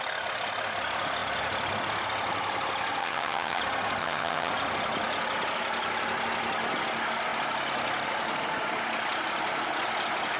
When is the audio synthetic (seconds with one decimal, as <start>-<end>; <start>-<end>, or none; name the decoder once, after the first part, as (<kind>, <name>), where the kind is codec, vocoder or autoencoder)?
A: 3.0-3.6 (vocoder, HiFi-GAN); 4.0-4.5